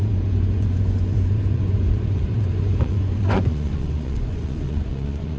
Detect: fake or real fake